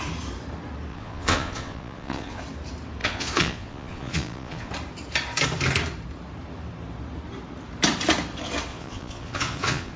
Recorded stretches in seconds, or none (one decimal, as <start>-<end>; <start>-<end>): 0.0-0.9; 2.4-3.0; 4.7-8.7